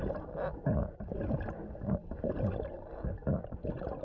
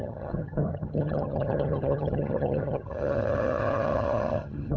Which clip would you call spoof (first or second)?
second